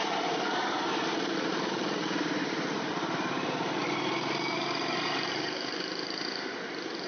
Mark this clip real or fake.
fake